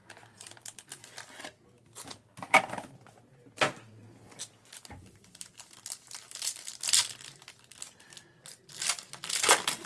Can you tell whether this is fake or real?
real